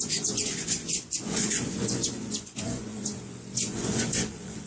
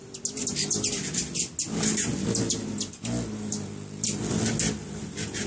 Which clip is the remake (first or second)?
first